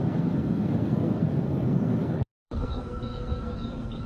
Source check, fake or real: fake